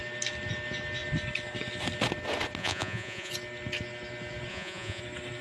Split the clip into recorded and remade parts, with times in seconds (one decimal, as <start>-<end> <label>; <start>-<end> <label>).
0.0-2.6 recorded; 2.6-3.3 remade; 3.3-4.5 recorded; 4.5-5.0 remade; 5.0-5.4 recorded